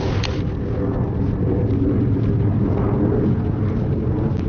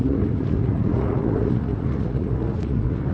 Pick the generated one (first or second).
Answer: second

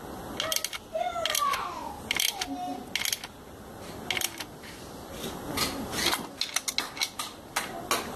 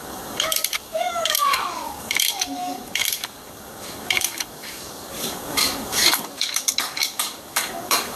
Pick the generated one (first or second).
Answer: second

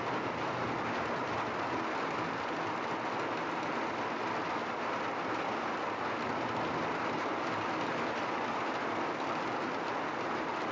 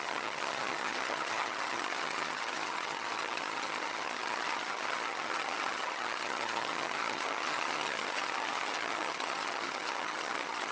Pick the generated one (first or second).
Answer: second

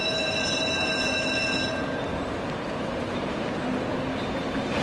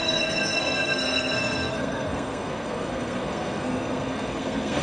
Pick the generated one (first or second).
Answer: second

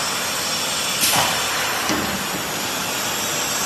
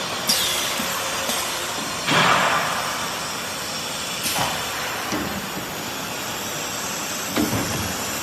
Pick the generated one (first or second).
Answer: second